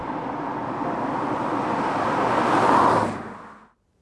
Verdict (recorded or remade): recorded